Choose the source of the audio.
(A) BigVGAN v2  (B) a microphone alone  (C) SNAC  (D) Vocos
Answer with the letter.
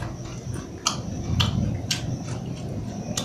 B